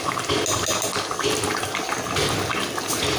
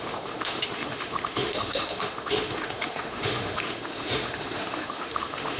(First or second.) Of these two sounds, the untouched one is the first